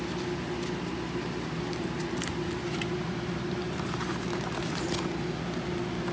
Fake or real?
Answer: real